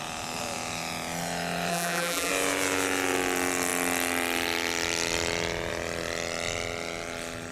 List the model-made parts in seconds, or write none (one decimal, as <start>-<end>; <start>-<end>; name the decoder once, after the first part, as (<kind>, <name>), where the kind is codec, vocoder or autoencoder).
1.7-2.3 (vocoder, BigVGAN v2)